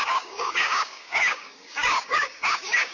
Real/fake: fake